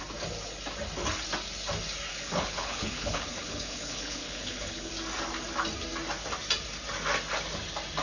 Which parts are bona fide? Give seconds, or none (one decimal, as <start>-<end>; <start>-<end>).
0.0-2.1; 4.9-8.0